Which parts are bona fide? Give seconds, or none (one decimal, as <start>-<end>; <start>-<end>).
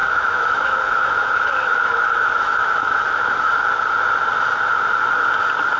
3.5-5.8